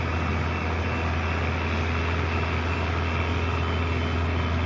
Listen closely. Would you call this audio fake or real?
real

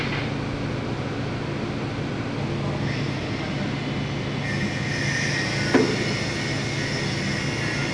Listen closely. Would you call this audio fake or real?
real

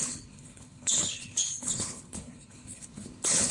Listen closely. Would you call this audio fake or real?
fake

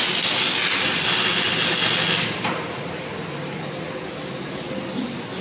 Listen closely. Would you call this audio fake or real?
real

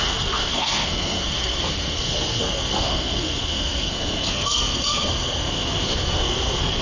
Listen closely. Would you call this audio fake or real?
fake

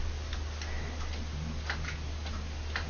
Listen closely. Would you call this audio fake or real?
real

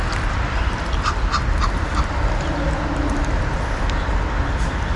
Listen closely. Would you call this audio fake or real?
real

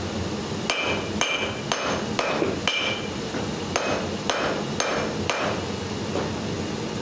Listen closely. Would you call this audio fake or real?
real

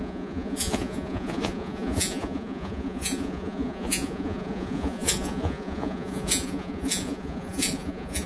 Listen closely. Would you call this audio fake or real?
fake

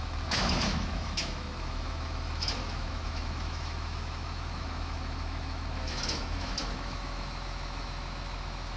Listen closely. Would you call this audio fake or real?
fake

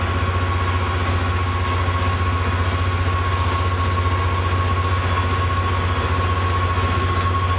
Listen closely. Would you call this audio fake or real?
real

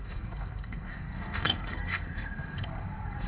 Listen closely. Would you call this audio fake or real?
fake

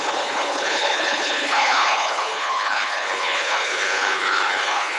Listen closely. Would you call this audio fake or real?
fake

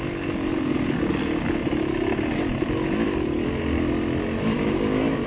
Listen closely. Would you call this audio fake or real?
real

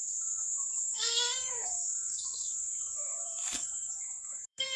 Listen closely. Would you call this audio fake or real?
fake